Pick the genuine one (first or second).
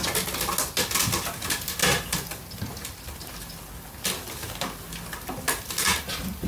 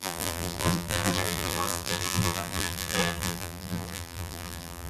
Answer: first